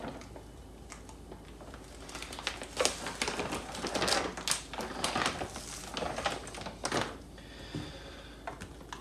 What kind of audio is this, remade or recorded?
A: recorded